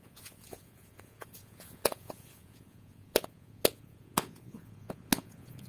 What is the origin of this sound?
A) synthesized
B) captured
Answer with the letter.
A